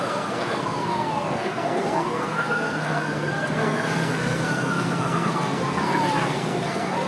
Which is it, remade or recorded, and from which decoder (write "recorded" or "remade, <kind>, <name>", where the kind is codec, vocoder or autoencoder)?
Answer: remade, codec, SNAC